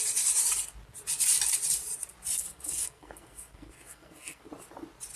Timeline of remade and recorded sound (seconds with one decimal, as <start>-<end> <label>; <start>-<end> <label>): 0.0-2.4 recorded; 2.4-4.5 remade; 4.5-5.2 recorded